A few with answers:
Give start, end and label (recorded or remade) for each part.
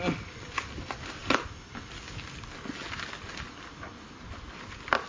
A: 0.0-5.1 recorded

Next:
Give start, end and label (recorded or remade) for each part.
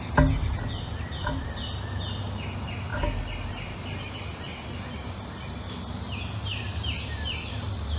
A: 0.0-8.0 recorded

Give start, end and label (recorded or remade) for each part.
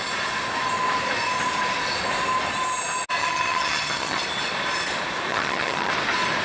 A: 0.0-3.2 recorded; 3.2-4.2 remade; 4.2-5.3 recorded; 5.3-5.9 remade; 5.9-6.4 recorded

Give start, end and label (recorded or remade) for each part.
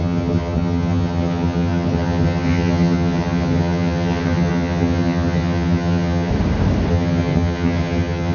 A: 0.0-6.3 remade; 6.3-6.9 recorded; 6.9-8.3 remade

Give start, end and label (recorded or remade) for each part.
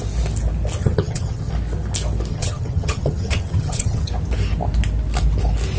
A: 0.0-0.8 recorded; 0.8-1.5 remade; 1.5-2.3 recorded; 2.3-4.1 remade; 4.1-5.8 recorded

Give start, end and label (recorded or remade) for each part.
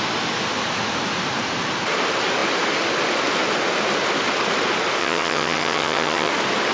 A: 0.0-5.0 recorded; 5.0-6.3 remade; 6.3-6.7 recorded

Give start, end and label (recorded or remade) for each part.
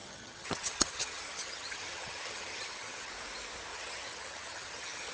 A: 0.0-3.1 remade; 3.1-3.7 recorded; 3.7-5.1 remade